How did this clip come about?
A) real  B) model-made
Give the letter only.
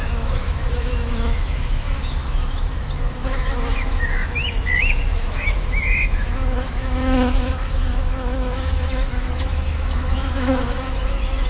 B